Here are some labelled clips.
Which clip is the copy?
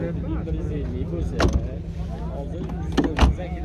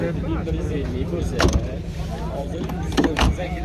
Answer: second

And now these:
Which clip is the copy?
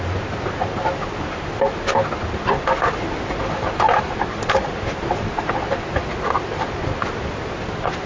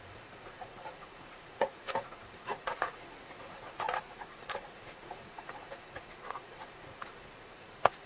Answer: second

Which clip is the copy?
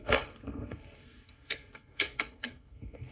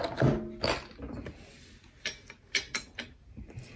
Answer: first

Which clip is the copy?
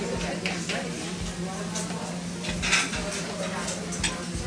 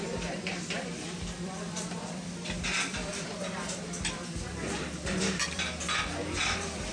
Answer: second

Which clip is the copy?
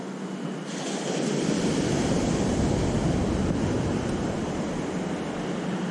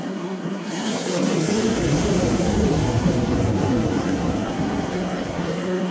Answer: second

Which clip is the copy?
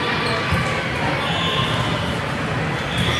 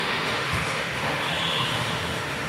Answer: second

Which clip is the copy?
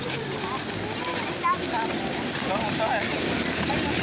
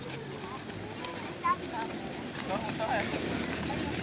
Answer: second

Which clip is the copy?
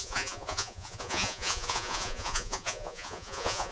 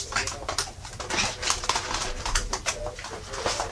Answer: first